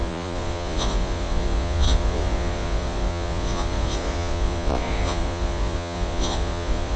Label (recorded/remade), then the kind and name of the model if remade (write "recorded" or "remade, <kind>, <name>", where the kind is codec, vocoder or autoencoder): remade, vocoder, Vocos